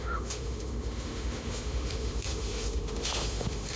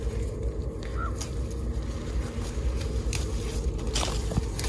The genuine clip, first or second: second